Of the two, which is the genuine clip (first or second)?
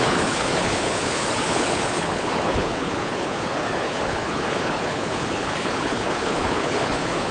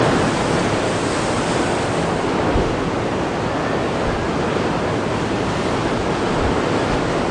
second